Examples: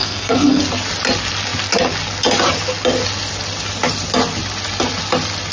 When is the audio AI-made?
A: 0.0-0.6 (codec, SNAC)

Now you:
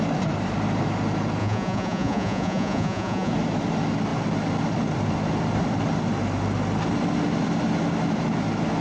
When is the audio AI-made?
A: 1.4-3.3 (vocoder, Vocos)

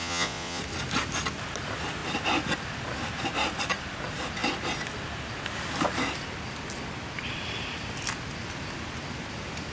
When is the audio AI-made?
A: 0.0-0.6 (vocoder, Vocos)

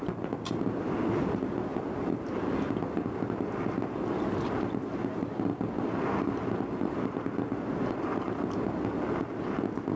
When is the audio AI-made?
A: none

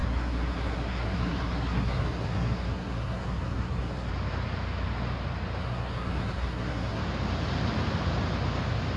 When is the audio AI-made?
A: 0.0-4.1 (codec, SNAC); 5.6-7.0